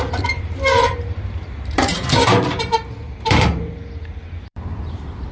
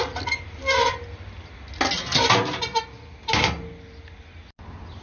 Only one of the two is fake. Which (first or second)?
first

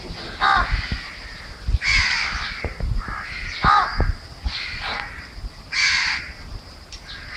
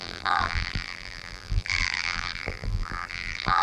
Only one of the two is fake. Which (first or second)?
second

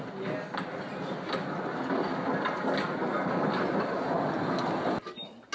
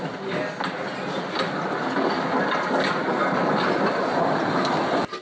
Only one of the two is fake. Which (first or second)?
second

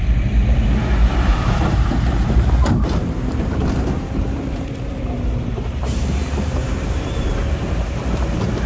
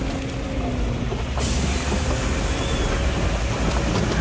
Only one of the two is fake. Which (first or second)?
first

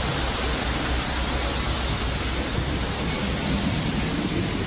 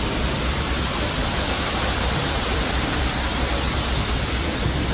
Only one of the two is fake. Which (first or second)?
second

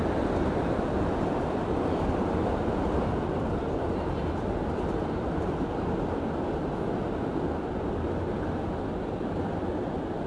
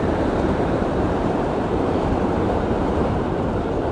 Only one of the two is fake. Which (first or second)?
second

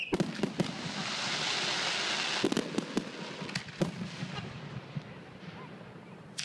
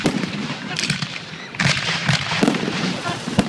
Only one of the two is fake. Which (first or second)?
second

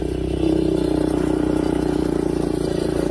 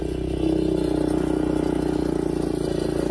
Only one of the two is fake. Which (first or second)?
first